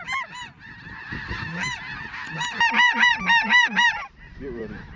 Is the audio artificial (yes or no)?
no